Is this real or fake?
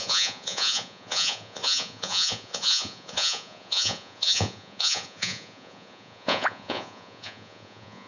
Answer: fake